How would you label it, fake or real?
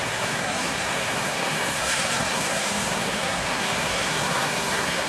fake